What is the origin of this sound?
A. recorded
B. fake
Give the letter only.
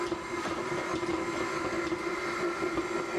A